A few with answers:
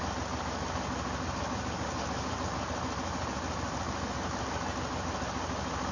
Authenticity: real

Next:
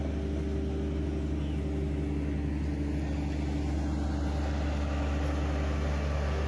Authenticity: real